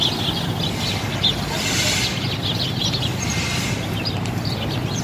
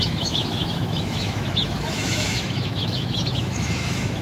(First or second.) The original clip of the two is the first